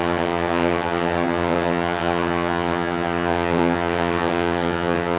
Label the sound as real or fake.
fake